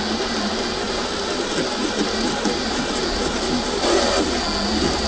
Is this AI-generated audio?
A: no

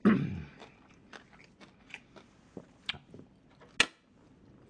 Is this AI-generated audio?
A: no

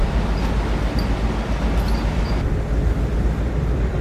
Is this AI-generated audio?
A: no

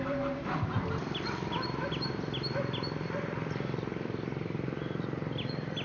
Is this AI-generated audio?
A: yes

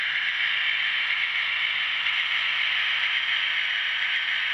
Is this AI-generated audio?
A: no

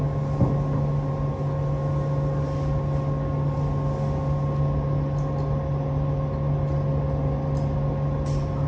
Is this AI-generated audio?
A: no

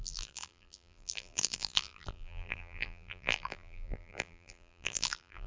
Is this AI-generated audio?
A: yes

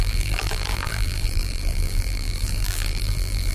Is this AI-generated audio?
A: yes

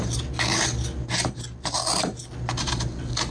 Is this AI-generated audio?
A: no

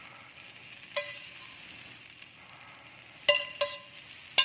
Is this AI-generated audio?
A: no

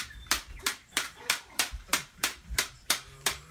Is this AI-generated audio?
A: yes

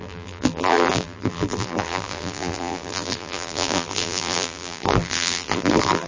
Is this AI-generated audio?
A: yes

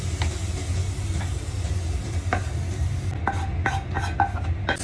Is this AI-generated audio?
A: no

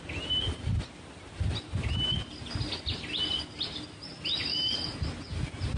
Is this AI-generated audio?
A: no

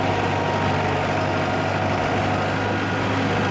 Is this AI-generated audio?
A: no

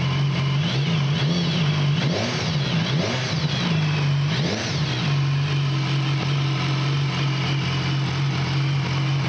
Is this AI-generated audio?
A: no